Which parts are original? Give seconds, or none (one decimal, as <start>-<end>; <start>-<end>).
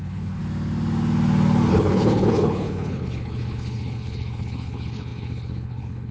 0.4-1.7